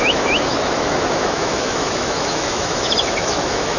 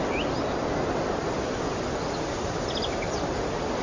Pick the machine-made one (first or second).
first